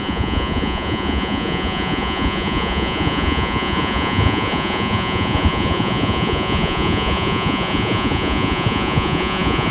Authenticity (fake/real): fake